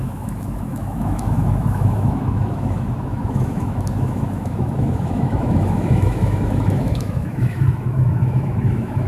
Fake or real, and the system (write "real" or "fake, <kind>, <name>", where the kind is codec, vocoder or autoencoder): fake, autoencoder, DAC-VAE